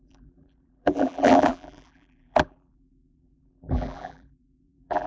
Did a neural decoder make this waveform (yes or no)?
yes